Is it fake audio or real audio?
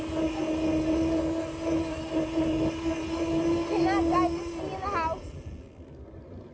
real